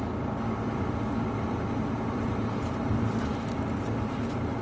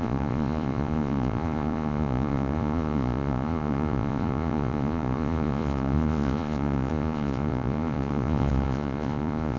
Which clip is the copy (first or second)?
second